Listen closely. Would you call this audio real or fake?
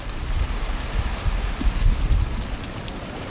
real